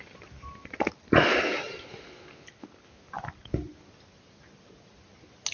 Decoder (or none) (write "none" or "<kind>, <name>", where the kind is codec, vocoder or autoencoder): none